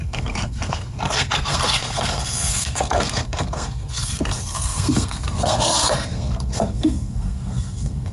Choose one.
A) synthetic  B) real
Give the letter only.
A